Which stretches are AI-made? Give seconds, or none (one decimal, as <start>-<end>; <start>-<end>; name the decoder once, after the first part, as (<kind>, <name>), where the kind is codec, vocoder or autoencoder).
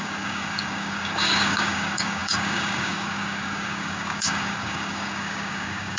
0.0-6.0 (codec, DAC)